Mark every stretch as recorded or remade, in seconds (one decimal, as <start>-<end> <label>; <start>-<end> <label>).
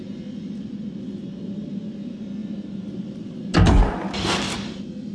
0.0-2.4 recorded; 2.4-5.1 remade